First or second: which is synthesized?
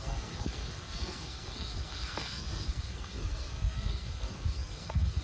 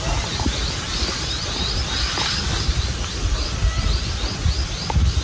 first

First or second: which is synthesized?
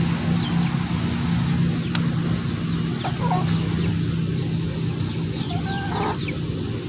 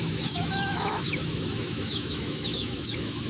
second